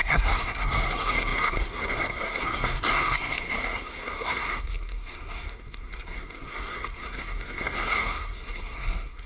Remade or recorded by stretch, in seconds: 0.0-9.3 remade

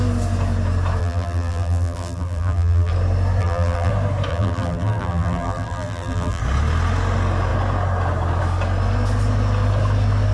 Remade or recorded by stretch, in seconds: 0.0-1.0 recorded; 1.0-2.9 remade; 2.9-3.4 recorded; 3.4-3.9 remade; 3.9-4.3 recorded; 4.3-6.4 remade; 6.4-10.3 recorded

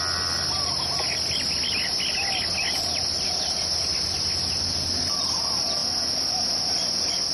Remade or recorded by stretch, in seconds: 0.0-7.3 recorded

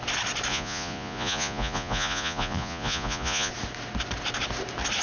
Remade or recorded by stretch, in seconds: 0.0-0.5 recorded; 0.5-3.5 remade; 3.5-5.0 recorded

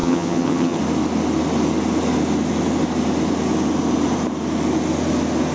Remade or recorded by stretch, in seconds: 0.0-0.8 remade; 0.8-5.5 recorded

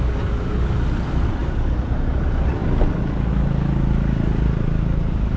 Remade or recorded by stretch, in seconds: 0.0-5.4 recorded

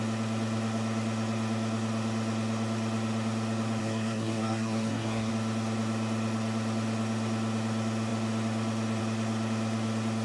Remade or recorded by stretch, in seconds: 0.0-3.8 recorded; 3.8-5.3 remade; 5.3-10.2 recorded